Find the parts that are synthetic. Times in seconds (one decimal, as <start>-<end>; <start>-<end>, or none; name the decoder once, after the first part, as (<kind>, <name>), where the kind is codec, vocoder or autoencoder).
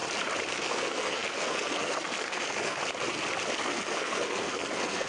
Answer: 0.5-2.8 (codec, SNAC); 3.6-5.1